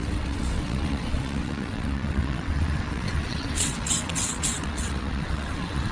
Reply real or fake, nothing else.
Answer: fake